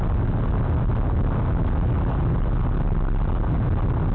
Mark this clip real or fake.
real